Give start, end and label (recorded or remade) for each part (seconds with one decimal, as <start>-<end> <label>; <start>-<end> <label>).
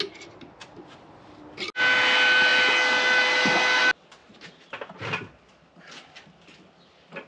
0.0-7.3 recorded